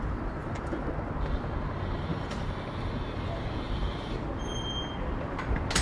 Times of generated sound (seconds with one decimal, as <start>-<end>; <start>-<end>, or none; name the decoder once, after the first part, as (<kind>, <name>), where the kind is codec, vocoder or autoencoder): 0.4-0.9 (vocoder, BigVGAN v2); 2.1-2.9